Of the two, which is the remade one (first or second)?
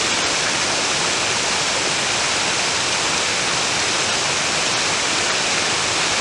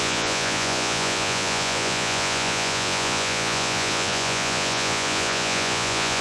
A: second